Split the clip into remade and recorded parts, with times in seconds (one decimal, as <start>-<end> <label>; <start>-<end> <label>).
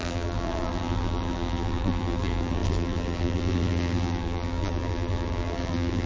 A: 0.0-6.1 remade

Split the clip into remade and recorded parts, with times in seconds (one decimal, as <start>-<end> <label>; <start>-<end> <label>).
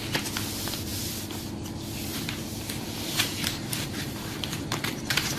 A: 0.0-2.1 recorded; 2.1-5.4 remade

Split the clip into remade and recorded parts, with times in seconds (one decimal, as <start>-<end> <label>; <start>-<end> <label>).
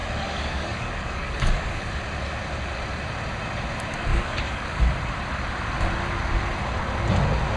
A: 0.0-1.9 remade; 1.9-4.1 recorded; 4.1-4.8 remade; 4.8-7.6 recorded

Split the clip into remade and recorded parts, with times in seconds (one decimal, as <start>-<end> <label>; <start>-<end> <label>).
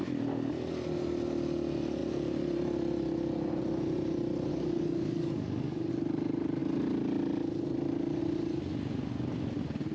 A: 0.0-4.5 recorded; 4.5-5.9 remade; 5.9-9.9 recorded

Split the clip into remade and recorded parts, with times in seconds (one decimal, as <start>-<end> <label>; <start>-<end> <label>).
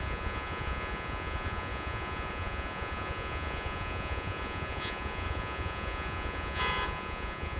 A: 0.0-7.6 remade